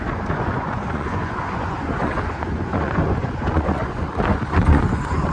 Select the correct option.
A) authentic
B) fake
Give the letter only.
B